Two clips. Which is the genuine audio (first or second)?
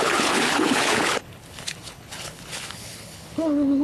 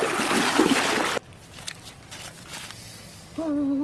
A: second